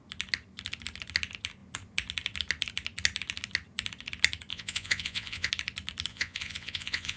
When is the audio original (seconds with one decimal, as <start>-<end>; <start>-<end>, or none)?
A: 0.0-4.5; 5.5-6.1